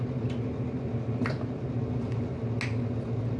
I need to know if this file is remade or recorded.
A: recorded